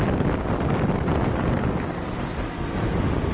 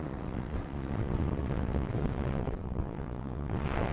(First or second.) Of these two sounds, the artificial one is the second